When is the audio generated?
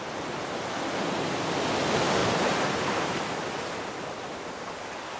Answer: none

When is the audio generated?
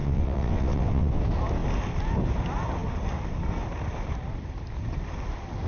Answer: 0.0-1.2 (vocoder, WaveNeXt)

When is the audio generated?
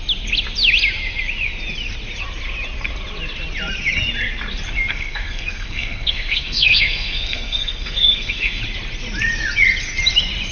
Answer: 4.9-8.6 (codec, SNAC)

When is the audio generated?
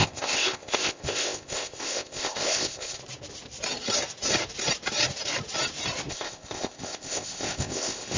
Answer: 0.0-3.0 (codec, ZipCodec); 6.1-8.2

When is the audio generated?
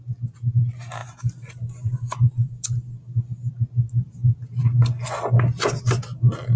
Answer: none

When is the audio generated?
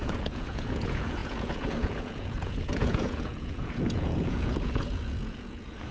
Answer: 0.0-5.9 (vocoder, Vocos)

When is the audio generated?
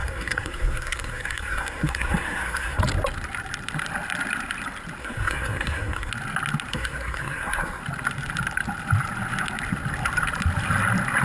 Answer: 0.0-2.8 (codec, SNAC); 5.0-6.1; 6.7-7.8